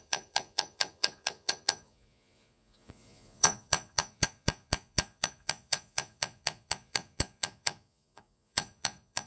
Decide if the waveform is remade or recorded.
remade